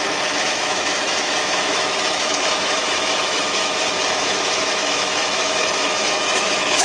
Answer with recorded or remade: remade